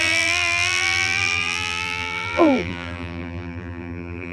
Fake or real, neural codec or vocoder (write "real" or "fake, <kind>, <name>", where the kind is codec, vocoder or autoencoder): fake, vocoder, BigVGAN v2